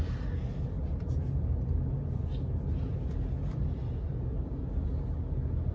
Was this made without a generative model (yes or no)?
yes